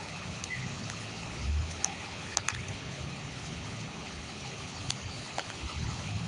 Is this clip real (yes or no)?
no